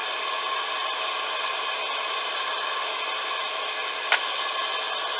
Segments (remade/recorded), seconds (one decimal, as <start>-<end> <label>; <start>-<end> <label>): 0.0-5.2 recorded